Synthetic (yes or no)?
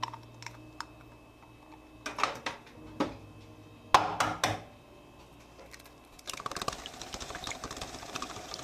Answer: no